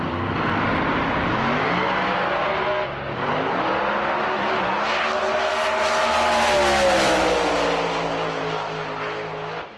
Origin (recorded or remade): recorded